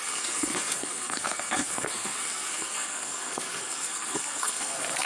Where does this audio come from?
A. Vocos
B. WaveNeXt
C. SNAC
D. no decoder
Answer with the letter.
C